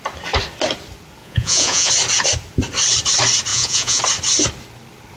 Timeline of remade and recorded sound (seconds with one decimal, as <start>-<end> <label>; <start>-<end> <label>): 0.0-1.2 recorded; 1.2-1.9 remade; 1.9-3.5 recorded; 3.5-4.0 remade; 4.0-5.2 recorded

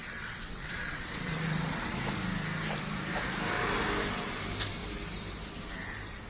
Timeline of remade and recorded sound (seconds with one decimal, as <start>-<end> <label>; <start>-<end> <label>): 0.0-2.0 remade; 2.0-6.3 recorded

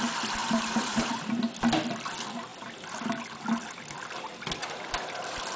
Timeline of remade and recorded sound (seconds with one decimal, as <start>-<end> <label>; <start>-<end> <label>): 0.0-0.4 recorded; 0.4-1.1 remade; 1.1-5.6 recorded